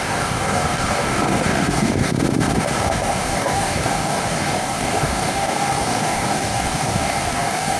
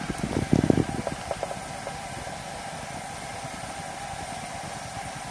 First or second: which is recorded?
second